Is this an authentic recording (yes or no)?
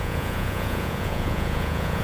no